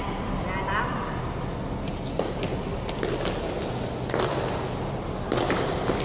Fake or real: real